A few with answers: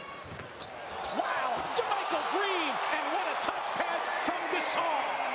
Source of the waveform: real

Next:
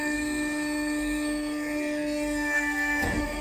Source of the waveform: fake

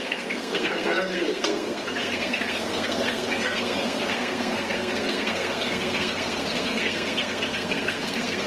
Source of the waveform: fake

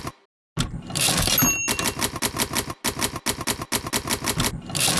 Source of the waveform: real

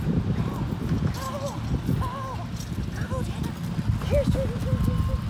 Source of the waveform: real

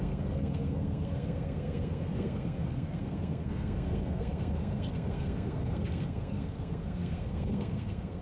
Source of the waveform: fake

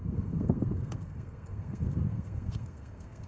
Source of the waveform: fake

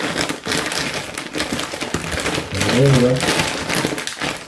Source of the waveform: real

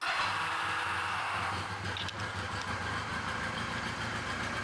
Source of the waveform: real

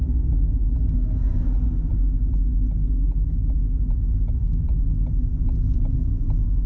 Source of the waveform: real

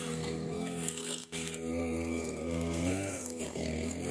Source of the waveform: fake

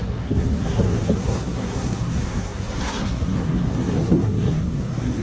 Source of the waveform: fake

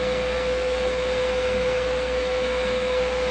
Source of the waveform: fake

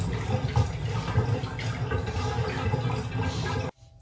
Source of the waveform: real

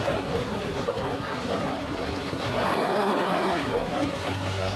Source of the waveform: fake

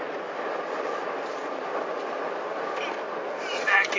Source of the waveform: real